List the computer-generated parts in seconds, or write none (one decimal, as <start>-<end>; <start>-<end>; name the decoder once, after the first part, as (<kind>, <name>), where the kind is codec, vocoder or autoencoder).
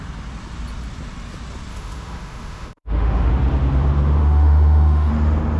1.7-3.3 (autoencoder, DAC-VAE); 4.2-5.1